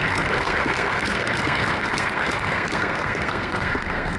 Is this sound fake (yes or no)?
yes